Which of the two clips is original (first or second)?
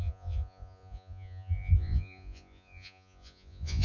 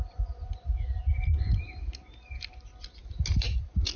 second